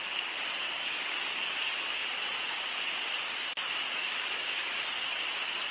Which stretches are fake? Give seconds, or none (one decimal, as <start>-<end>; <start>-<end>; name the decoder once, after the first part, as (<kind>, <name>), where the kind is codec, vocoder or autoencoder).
0.6-2.6 (codec, DAC); 3.2-5.1

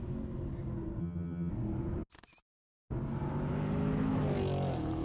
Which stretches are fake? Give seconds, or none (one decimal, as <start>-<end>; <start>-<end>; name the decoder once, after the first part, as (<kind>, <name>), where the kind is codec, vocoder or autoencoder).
1.0-1.5 (vocoder, HiFi-GAN)

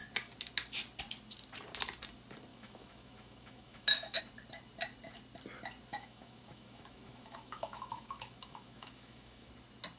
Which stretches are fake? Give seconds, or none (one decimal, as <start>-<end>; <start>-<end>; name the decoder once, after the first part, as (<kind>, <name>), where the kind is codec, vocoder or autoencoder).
2.5-4.2 (autoencoder, DAC-VAE); 5.9-9.5

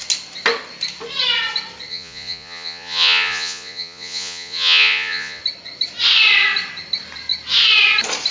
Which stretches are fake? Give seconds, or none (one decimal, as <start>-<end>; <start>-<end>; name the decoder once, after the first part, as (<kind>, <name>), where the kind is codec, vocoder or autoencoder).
1.9-5.4 (vocoder, Vocos)

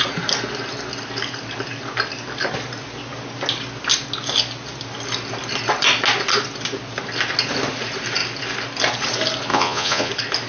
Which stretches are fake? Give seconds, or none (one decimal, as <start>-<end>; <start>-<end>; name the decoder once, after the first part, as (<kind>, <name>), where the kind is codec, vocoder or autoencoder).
9.5-10.1 (vocoder, Vocos)

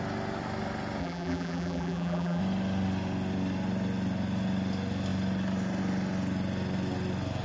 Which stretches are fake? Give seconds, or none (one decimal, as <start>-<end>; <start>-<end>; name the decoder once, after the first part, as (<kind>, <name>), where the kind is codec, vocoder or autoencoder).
1.0-2.4 (vocoder, BigVGAN v2)

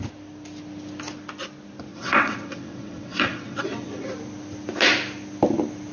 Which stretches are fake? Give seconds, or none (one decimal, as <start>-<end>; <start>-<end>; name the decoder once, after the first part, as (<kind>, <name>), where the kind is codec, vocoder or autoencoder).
1.9-4.1 (vocoder, WaveNeXt)